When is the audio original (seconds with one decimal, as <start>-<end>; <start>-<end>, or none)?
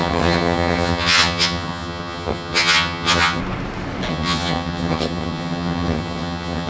3.4-4.1